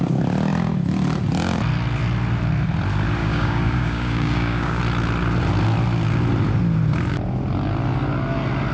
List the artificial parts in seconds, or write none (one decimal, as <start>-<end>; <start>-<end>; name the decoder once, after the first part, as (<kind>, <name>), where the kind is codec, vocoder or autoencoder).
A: 3.2-4.8 (codec, DAC)